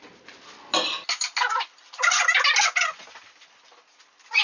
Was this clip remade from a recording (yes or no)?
no